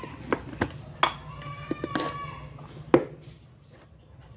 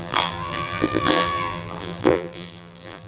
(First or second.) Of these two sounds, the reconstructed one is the second